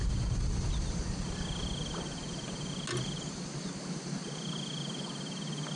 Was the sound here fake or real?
real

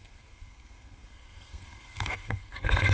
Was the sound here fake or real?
fake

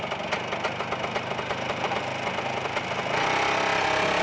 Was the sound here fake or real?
real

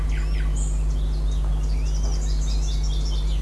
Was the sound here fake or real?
real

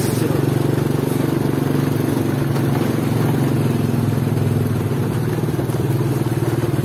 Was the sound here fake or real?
real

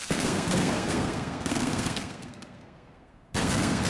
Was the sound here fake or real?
fake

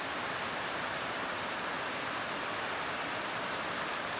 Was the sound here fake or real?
real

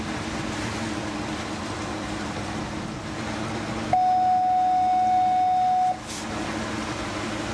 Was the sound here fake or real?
real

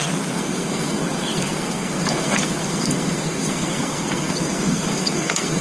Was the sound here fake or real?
fake